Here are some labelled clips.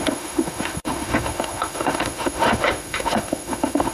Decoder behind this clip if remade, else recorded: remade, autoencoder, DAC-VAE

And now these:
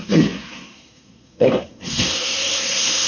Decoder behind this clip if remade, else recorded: remade, codec, SNAC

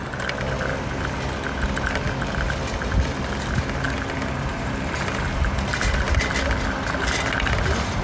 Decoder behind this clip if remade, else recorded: recorded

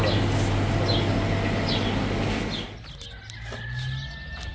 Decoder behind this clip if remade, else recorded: recorded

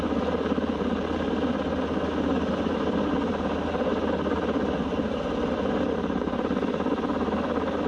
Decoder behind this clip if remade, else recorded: recorded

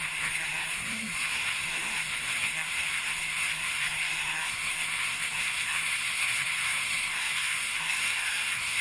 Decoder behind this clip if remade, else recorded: remade, codec, SNAC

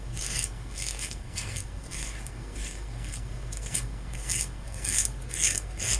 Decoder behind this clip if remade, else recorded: remade, codec, SNAC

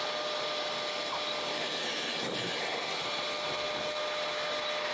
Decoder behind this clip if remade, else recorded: recorded